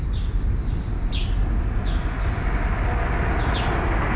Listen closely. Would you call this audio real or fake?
real